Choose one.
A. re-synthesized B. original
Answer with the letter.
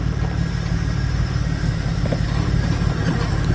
B